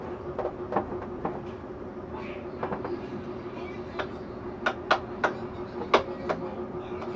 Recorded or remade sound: recorded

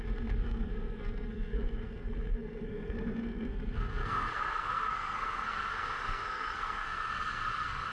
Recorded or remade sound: remade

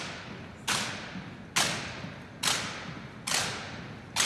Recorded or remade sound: recorded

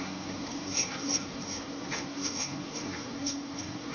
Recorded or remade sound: remade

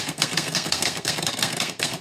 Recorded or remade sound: remade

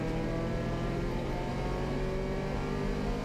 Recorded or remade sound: recorded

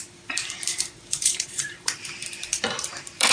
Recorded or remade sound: remade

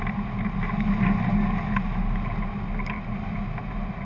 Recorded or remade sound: recorded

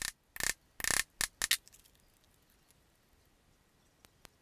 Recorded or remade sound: recorded